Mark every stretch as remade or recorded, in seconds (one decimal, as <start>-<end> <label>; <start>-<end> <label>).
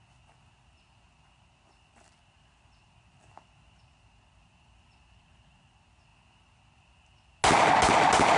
0.0-8.4 recorded